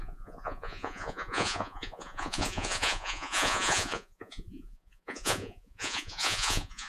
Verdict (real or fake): fake